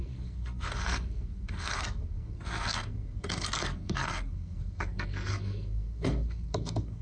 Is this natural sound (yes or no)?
no